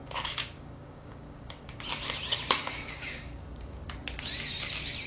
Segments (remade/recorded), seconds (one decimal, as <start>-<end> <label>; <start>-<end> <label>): 0.0-1.8 remade; 1.8-2.6 recorded; 2.6-3.8 remade; 3.8-5.1 recorded